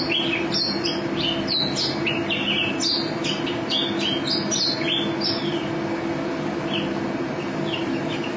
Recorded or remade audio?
recorded